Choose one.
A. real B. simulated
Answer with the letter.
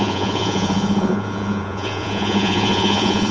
B